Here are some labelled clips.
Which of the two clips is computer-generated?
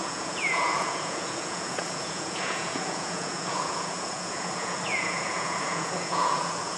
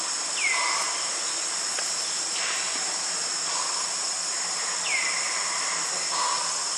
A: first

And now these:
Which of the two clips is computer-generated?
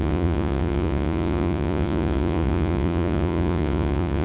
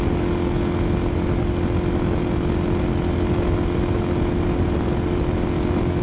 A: first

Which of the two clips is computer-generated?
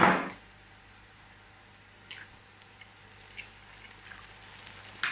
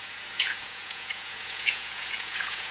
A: second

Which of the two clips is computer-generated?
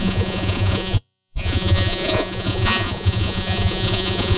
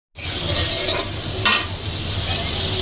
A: first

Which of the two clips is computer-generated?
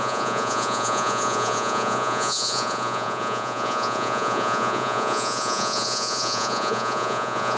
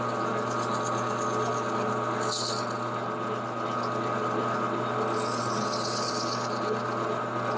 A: first